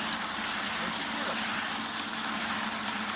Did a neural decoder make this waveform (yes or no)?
no